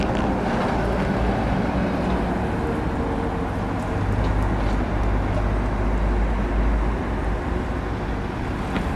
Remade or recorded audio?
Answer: recorded